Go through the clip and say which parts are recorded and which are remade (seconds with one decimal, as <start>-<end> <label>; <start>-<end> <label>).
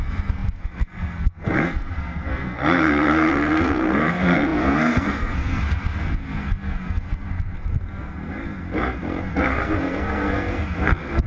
0.0-11.3 remade